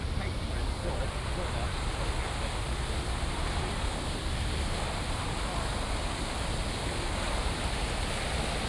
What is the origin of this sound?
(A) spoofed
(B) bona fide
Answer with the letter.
B